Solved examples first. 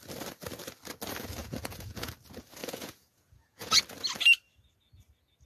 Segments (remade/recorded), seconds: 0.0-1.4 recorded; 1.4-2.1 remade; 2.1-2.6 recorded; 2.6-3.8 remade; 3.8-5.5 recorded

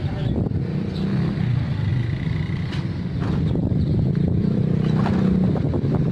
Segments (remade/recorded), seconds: 0.0-6.1 recorded